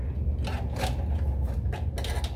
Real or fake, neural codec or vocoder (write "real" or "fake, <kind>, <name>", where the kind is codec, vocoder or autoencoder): real